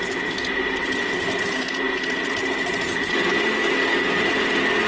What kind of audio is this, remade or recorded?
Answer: recorded